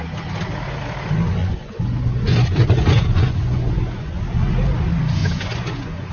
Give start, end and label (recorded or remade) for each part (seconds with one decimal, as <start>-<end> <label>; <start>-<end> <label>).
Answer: 0.0-1.4 recorded; 1.4-4.2 remade; 4.2-5.2 recorded; 5.2-6.1 remade